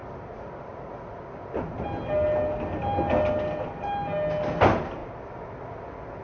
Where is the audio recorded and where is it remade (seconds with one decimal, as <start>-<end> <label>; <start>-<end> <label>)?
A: 0.0-6.2 recorded